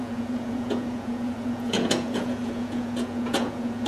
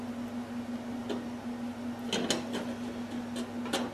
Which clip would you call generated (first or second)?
first